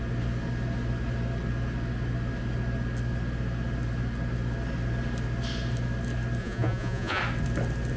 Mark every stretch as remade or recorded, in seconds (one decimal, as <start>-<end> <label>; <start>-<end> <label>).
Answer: 0.0-6.4 recorded; 6.4-7.2 remade; 7.2-8.0 recorded